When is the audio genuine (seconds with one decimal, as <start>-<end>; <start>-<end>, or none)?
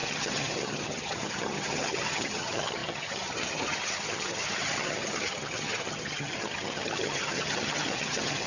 none